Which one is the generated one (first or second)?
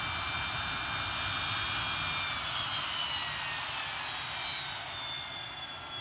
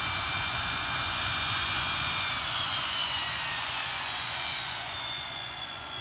second